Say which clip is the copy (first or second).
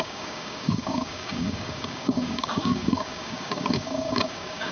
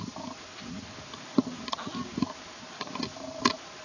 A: first